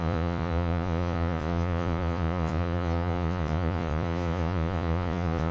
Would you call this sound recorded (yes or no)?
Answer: no